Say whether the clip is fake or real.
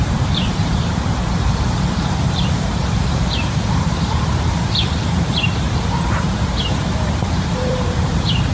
fake